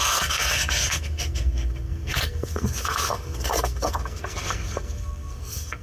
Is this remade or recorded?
remade